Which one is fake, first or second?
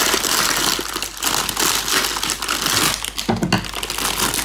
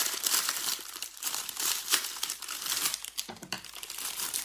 second